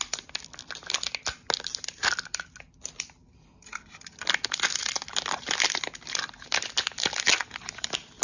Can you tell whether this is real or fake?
real